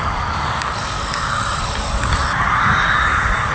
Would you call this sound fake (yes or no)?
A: yes